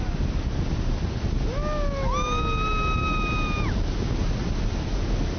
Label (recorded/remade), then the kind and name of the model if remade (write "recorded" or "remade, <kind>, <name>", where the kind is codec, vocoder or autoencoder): recorded